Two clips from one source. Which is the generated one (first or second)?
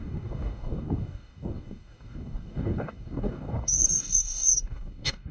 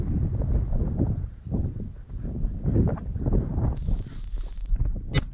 first